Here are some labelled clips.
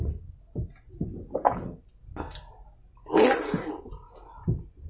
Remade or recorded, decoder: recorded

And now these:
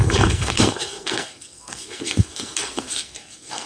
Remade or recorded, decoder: remade, codec, SNAC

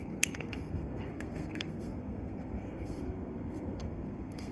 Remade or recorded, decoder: remade, codec, SNAC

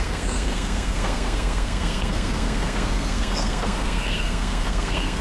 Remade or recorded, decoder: remade, codec, SNAC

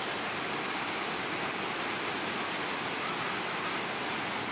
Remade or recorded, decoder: recorded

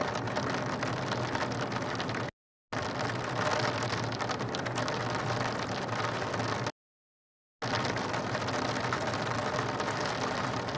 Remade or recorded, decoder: recorded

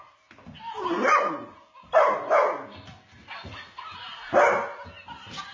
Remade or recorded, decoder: recorded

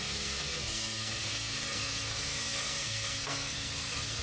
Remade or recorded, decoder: remade, codec, SNAC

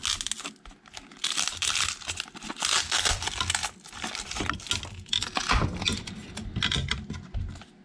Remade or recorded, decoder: recorded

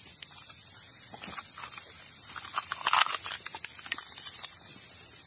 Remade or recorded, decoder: recorded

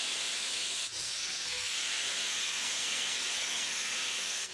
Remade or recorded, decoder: remade, codec, SNAC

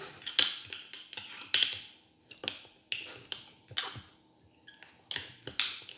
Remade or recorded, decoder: recorded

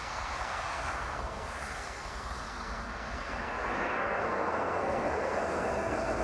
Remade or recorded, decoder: remade, codec, SNAC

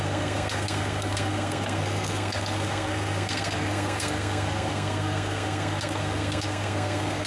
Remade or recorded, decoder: remade, codec, SNAC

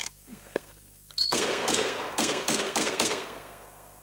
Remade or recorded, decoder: remade, codec, SNAC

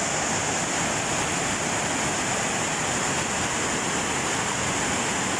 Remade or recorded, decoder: recorded